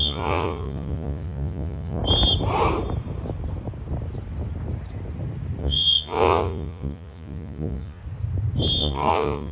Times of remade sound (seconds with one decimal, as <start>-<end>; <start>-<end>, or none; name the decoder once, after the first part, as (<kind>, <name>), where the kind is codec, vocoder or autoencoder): 0.0-2.0 (vocoder, Vocos); 5.6-8.0; 8.8-9.5